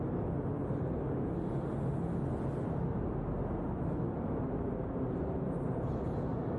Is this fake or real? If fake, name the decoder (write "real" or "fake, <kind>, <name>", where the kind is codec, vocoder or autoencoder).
real